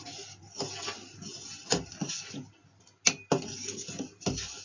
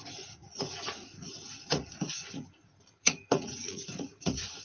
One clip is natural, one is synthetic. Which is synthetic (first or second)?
second